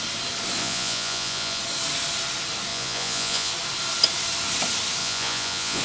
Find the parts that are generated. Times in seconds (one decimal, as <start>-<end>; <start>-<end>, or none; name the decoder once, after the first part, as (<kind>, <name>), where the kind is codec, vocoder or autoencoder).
0.6-1.6 (vocoder, Vocos); 2.7-3.5; 5.0-5.8